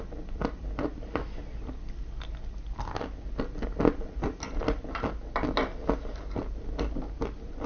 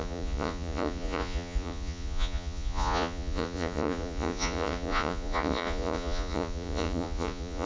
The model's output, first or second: second